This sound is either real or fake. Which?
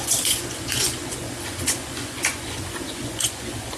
fake